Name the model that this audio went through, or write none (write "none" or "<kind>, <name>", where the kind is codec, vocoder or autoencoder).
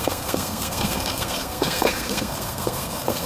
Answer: codec, SNAC